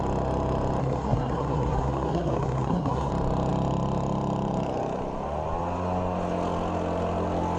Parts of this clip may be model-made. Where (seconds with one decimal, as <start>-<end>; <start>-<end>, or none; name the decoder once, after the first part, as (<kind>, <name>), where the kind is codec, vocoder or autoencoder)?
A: 0.8-3.1 (codec, SNAC)